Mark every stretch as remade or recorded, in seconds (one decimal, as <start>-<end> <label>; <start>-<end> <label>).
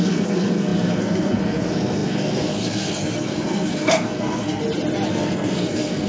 0.0-4.6 remade; 4.6-5.1 recorded; 5.1-6.1 remade